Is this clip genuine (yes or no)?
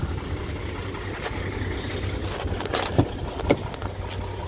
yes